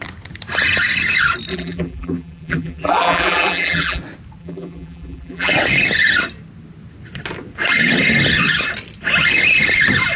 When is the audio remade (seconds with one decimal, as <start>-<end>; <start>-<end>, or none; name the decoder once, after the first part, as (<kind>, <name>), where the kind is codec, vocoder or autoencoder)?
1.5-4.0 (vocoder, BigVGAN v2); 4.4-5.5